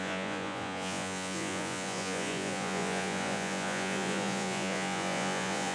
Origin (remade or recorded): remade